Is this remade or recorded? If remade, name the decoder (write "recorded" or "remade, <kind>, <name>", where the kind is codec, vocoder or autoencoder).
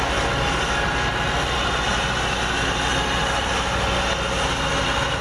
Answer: recorded